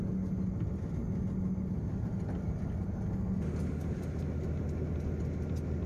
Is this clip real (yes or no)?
yes